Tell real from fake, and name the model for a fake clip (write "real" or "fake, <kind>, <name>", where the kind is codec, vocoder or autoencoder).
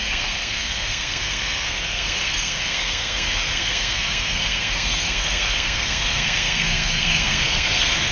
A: fake, codec, SNAC